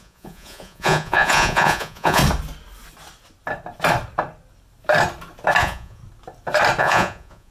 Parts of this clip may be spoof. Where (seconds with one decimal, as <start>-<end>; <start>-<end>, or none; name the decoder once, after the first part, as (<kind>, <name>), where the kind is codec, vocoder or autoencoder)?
0.0-2.2 (vocoder, Vocos); 5.6-6.0; 6.8-7.5